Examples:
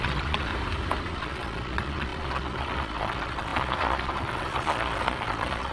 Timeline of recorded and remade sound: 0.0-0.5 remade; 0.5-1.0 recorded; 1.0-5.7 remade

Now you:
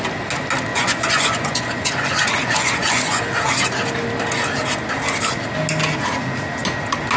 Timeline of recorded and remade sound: 0.0-0.7 recorded; 0.7-3.2 remade; 3.2-7.2 recorded